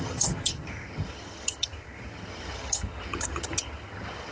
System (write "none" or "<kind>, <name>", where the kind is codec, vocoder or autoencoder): vocoder, HiFi-GAN